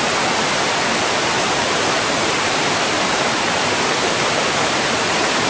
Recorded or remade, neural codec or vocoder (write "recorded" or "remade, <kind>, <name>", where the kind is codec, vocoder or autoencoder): remade, vocoder, BigVGAN v2